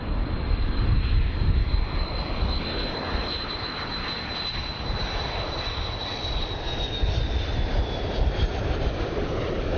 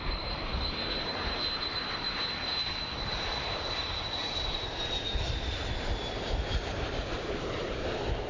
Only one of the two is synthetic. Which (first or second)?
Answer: second